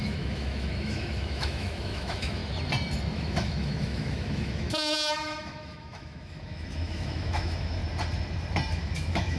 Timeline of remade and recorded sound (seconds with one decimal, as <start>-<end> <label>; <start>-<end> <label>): 0.0-2.4 remade; 2.4-3.1 recorded; 3.1-7.8 remade; 7.8-8.7 recorded; 8.7-9.4 remade